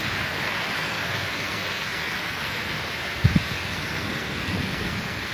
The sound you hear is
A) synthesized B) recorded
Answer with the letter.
A